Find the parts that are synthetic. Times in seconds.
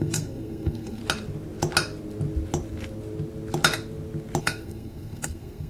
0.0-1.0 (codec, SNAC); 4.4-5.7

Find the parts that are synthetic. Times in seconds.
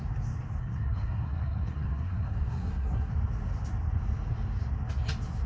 0.6-3.1 (codec, SNAC)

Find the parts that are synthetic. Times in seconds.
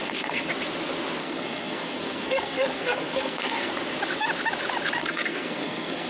0.0-0.5 (codec, SNAC); 1.2-3.7; 5.0-6.1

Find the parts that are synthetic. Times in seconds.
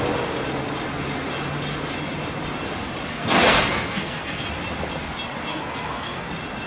3.1-4.5 (codec, SNAC); 5.5-6.3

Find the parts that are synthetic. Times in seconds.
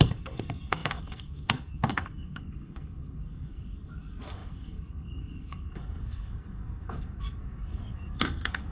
0.0-8.7 (codec, SNAC)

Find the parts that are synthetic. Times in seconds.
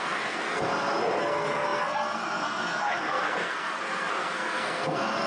0.0-0.7 (codec, SNAC); 1.2-5.3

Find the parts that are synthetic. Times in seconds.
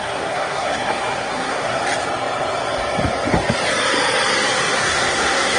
0.0-1.8 (codec, SNAC); 4.7-5.6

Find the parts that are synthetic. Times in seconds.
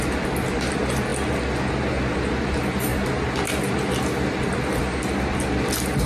none